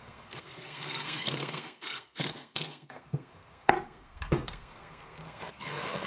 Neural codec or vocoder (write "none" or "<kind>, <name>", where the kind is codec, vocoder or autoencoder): codec, SNAC